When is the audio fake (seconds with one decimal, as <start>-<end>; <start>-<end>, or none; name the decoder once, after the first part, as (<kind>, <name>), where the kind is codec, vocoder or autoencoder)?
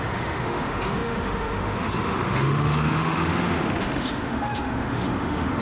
0.0-5.6 (autoencoder, DAC-VAE)